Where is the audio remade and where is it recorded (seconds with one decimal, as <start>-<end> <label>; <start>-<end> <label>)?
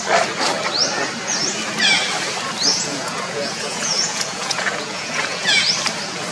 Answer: 0.0-2.7 recorded; 2.7-5.6 remade; 5.6-6.3 recorded